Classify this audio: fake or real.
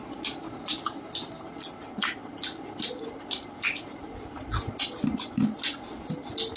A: real